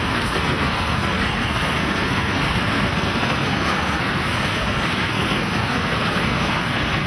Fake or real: fake